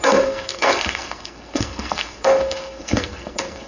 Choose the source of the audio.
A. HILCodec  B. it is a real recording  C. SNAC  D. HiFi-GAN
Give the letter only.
C